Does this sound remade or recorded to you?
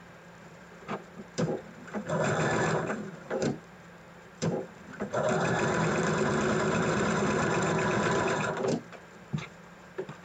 remade